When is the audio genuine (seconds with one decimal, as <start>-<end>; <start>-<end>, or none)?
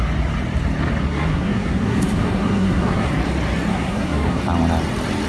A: 0.0-1.0; 3.1-3.7; 4.4-5.3